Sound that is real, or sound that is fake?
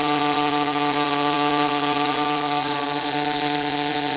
fake